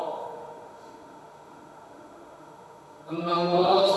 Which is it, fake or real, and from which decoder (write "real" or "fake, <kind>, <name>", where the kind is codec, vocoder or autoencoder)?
fake, autoencoder, DAC-VAE